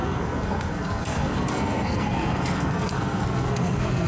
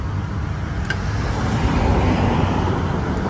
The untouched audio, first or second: second